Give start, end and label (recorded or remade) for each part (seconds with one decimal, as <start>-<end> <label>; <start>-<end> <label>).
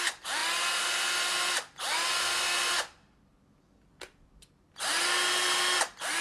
0.0-6.2 recorded